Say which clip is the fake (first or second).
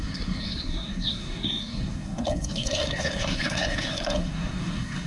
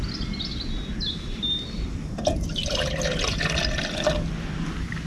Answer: first